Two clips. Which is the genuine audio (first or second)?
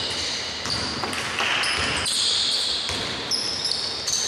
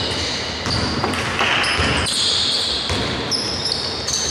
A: second